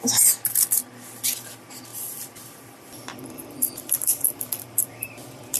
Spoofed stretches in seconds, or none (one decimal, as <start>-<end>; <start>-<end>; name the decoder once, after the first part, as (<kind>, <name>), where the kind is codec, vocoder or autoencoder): 1.9-5.6 (vocoder, BigVGAN v2)